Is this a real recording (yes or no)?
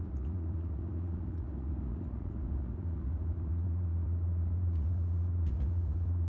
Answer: no